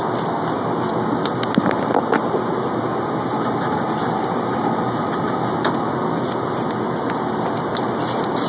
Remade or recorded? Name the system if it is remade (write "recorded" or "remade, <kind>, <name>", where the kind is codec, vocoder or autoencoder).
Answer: recorded